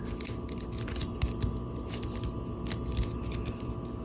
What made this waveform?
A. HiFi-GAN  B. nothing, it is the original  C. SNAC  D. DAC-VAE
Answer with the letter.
B